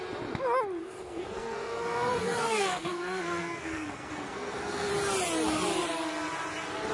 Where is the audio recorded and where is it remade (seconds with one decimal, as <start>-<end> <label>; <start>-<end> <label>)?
0.0-0.8 recorded; 0.8-4.9 remade; 4.9-6.9 recorded